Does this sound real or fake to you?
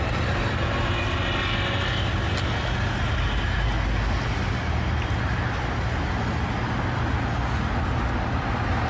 real